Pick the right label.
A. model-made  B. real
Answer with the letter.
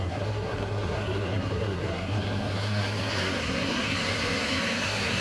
A